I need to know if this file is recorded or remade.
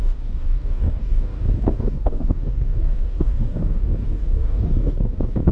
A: remade